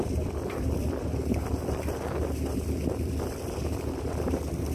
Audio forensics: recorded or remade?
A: remade